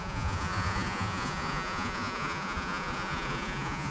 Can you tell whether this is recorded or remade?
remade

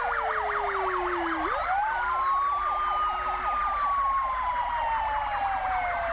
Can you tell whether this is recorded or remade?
recorded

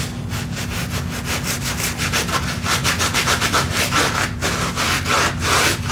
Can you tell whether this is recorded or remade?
recorded